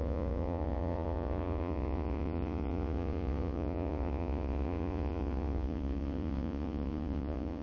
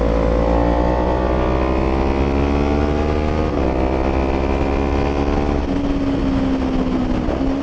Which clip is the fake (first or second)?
first